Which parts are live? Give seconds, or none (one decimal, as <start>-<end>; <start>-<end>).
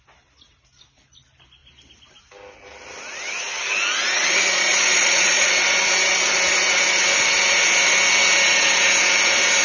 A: 0.0-4.7; 5.5-9.6